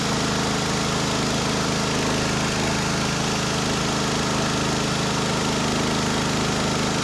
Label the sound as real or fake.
real